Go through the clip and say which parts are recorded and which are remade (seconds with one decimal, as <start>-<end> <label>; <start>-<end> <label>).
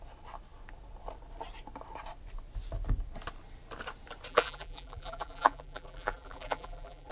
0.0-4.3 recorded; 4.3-7.1 remade